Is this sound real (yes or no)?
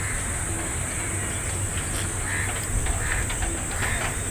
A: yes